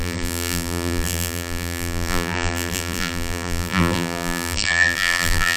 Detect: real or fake fake